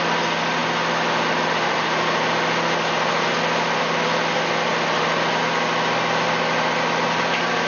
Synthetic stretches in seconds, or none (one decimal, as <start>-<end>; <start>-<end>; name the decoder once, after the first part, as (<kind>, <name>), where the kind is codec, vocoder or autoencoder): none

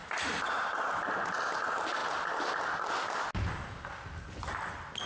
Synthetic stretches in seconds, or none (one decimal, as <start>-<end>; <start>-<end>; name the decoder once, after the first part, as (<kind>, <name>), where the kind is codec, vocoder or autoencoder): 0.0-0.9 (vocoder, BigVGAN v2); 2.0-2.7